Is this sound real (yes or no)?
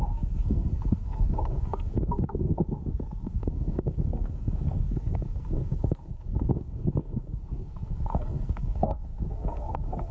no